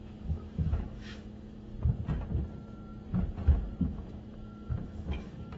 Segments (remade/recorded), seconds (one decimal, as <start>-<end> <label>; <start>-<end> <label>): 0.0-1.7 remade; 1.7-3.8 recorded; 3.8-5.6 remade

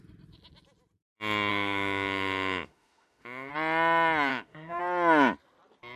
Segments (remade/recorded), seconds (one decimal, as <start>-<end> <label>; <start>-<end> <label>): 0.0-1.5 recorded; 1.5-3.5 remade; 3.5-4.3 recorded; 4.3-4.8 remade; 4.8-6.0 recorded

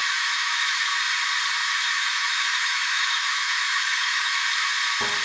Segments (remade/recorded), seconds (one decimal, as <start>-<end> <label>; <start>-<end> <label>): 0.0-0.9 remade; 0.9-1.6 recorded; 1.6-4.7 remade; 4.7-5.2 recorded

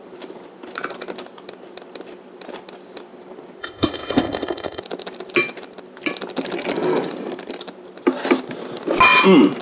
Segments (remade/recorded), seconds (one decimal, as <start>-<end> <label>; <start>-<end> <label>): 0.0-3.6 recorded; 3.6-4.8 remade; 4.8-9.6 recorded

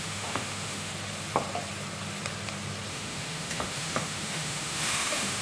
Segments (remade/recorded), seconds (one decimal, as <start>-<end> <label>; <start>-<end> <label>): 0.0-0.9 remade; 0.9-2.9 recorded; 2.9-5.4 remade

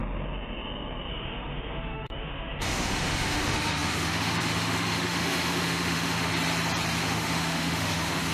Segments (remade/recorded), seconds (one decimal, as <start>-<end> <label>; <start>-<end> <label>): 0.0-1.1 recorded; 1.1-6.3 remade; 6.3-7.0 recorded; 7.0-8.3 remade